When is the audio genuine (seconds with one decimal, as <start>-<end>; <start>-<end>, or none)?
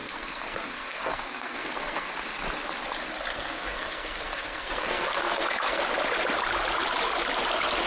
2.1-3.3; 5.8-7.9